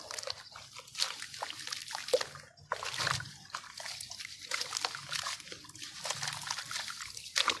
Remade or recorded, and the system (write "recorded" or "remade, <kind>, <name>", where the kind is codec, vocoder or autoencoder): recorded